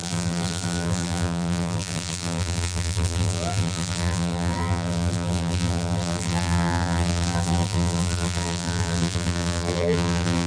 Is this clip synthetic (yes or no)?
yes